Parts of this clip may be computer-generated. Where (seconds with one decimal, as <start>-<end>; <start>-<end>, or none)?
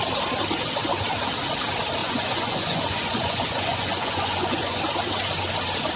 2.0-4.8